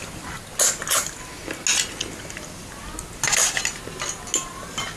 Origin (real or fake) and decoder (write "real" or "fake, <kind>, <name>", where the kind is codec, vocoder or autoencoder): real